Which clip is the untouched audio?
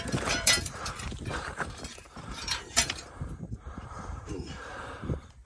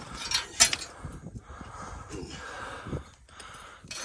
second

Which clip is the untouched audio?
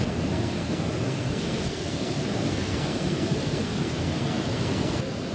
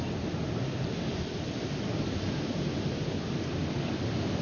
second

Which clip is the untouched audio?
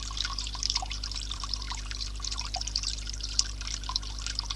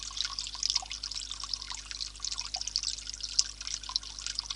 second